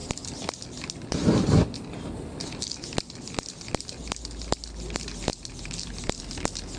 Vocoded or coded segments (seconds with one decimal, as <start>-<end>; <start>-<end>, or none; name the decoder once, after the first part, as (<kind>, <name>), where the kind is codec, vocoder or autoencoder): none